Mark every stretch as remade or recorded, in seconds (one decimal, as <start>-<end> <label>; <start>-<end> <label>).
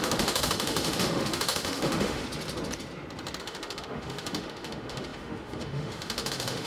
0.0-2.2 remade; 2.2-3.4 recorded; 3.4-6.7 remade